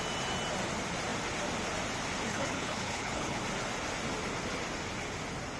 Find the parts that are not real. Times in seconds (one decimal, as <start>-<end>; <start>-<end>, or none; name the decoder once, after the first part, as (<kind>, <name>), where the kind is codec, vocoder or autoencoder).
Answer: 2.3-3.4 (codec, HILCodec)